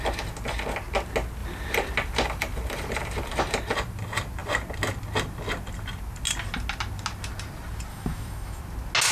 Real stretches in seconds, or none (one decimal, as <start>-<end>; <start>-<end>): 0.0-7.9; 8.6-9.1